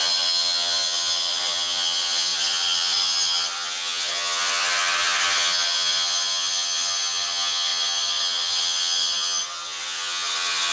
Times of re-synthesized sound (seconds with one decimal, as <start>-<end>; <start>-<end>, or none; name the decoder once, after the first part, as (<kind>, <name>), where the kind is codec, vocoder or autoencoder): 0.0-10.7 (vocoder, HiFi-GAN)